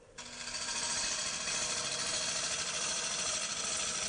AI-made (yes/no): no